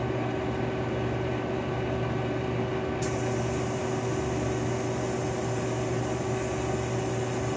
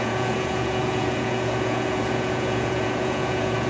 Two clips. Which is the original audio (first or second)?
first